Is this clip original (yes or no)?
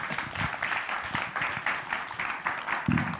yes